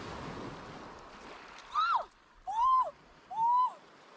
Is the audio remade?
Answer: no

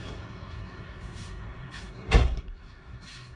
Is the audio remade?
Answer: yes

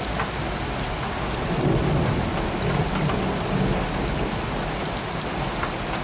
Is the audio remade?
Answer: no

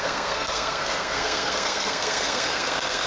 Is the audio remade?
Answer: yes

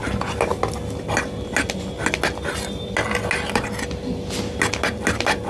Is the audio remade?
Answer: no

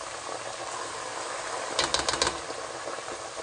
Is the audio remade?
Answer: no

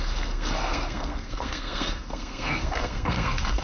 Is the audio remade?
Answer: yes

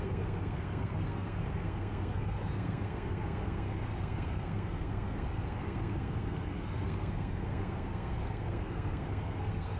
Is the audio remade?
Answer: yes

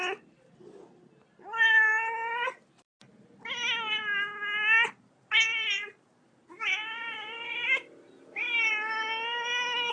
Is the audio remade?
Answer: no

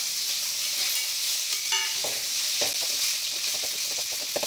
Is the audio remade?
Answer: no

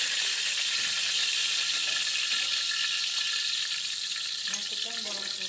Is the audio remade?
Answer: no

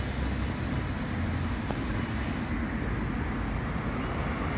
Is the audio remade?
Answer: no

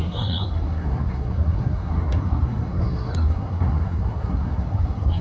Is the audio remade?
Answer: yes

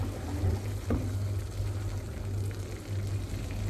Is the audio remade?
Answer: no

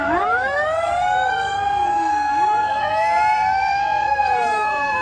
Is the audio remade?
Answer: yes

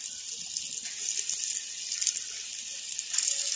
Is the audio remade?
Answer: no